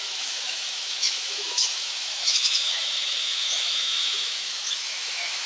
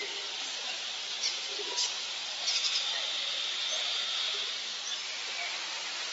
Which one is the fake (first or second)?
first